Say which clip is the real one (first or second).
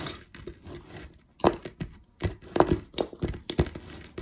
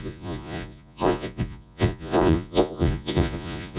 first